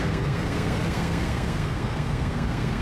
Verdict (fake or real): fake